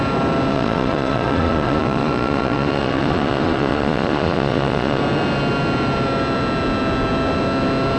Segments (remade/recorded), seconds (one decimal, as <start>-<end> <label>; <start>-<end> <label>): 0.0-0.5 recorded; 0.5-5.0 remade; 5.0-8.0 recorded